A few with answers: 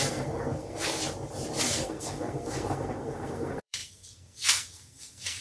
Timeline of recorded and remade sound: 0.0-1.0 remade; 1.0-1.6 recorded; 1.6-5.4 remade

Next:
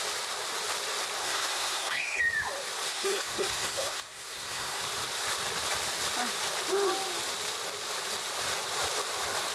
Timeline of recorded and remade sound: 0.0-1.2 recorded; 1.2-2.2 remade; 2.2-2.9 recorded; 2.9-4.8 remade; 4.8-9.5 recorded

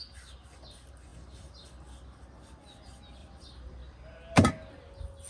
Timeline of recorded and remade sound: 0.0-3.2 recorded; 3.2-4.5 remade; 4.5-5.3 recorded

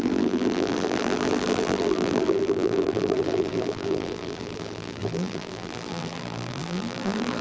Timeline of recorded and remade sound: 0.0-7.4 remade